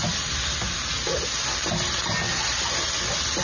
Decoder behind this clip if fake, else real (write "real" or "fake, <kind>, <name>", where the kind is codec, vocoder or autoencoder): real